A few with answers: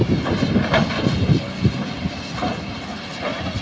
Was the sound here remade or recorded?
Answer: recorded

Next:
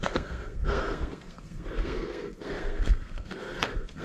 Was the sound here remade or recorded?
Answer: remade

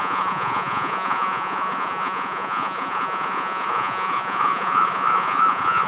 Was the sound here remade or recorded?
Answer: remade